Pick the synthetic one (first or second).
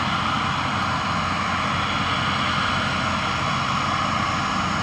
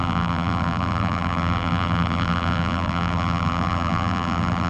second